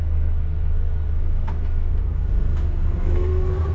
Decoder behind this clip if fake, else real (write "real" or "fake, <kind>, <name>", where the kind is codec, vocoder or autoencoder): fake, codec, SNAC